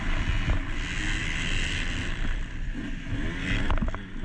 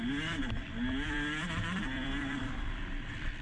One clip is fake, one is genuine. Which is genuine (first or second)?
first